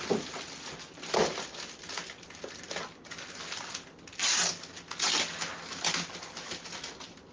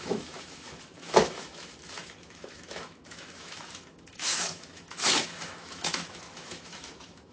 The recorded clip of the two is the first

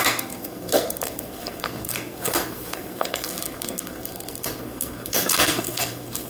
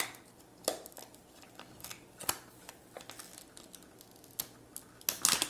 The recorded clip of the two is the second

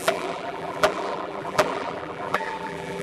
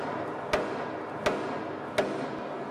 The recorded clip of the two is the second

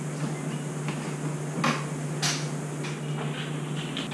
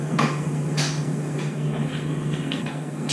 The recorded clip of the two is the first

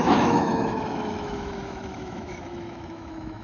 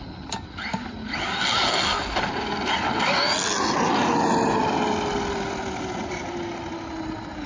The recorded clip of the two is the second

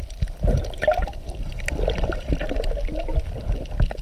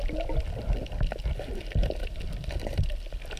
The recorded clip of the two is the second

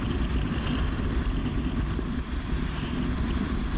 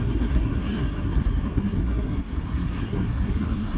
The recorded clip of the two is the first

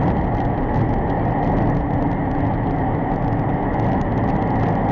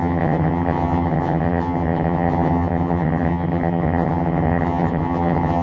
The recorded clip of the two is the first